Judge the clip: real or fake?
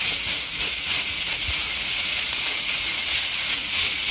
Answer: fake